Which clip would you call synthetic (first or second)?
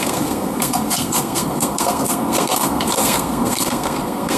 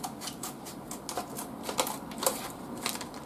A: first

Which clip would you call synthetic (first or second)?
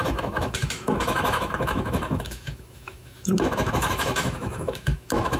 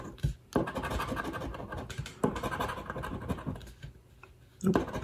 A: first